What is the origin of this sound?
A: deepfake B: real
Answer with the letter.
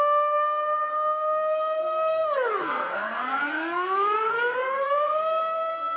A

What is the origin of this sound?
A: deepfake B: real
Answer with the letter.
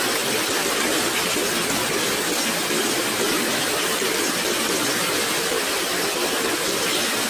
B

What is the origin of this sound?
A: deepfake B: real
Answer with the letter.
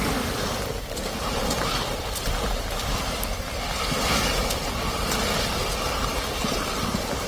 B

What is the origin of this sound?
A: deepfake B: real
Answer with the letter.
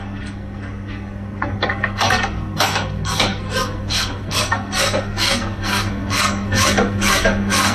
A